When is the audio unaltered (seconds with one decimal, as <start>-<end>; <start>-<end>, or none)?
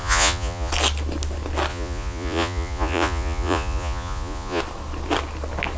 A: 0.7-1.7; 4.6-5.8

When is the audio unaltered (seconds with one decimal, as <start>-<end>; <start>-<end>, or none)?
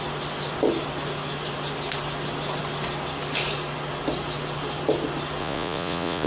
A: 0.0-5.4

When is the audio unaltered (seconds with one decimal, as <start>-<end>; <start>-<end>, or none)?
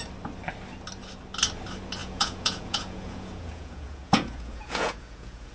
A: 0.0-2.0